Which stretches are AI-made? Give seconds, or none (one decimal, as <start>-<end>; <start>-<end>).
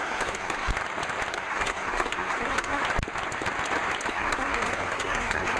0.0-0.7; 1.3-2.8; 4.1-5.6